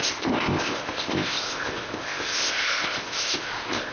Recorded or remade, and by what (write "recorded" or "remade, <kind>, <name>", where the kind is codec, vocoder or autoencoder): remade, codec, ZipCodec